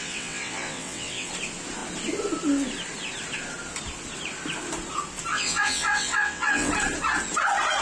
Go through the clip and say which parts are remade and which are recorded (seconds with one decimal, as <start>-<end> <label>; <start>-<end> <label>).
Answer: 0.0-1.3 remade; 1.3-5.3 recorded; 5.3-6.7 remade; 6.7-7.8 recorded